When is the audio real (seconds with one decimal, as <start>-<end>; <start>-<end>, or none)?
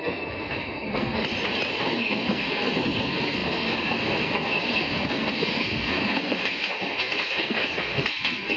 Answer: 1.2-1.8